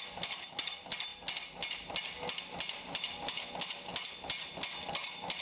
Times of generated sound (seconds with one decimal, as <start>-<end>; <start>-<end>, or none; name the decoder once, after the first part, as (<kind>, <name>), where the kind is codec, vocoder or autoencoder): none